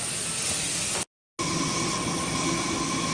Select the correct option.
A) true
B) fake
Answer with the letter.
A